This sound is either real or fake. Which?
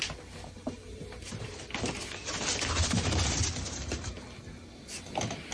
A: real